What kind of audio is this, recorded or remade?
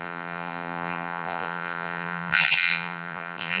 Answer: remade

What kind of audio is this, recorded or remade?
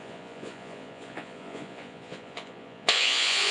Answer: remade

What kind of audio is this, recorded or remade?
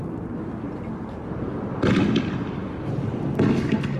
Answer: recorded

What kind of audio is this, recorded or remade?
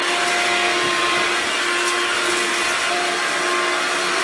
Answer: recorded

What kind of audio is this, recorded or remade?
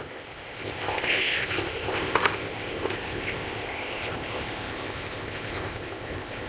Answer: remade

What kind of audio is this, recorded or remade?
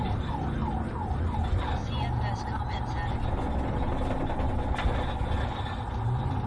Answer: recorded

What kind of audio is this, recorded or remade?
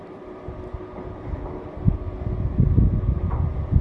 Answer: recorded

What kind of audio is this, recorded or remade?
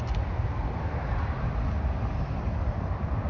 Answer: recorded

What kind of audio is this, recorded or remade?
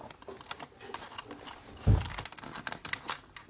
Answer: recorded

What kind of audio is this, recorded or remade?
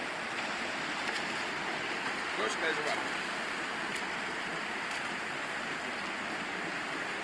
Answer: recorded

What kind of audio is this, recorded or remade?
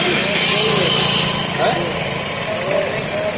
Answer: recorded